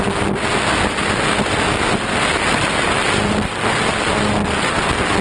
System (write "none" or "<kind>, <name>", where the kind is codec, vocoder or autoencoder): none